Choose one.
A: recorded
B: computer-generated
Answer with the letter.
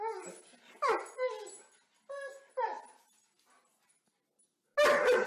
A